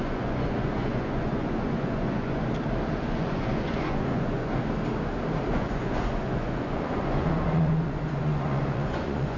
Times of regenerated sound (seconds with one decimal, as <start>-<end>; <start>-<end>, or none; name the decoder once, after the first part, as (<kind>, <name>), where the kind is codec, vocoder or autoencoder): 0.0-2.4 (vocoder, Vocos); 3.1-4.5; 5.5-9.4